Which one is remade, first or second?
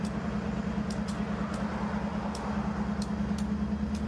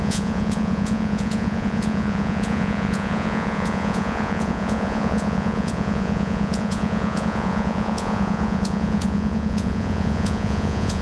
second